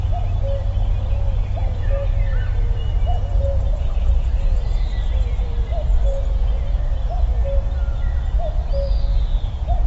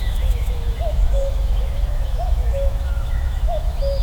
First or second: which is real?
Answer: first